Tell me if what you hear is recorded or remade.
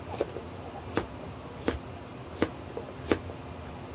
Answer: recorded